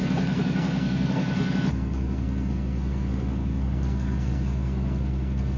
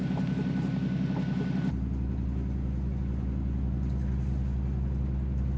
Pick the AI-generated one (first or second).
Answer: first